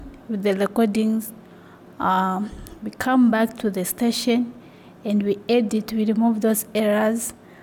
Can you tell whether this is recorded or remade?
recorded